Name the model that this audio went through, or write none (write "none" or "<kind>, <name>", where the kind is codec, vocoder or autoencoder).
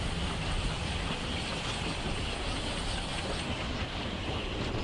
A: none